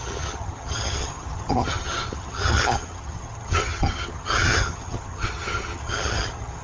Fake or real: fake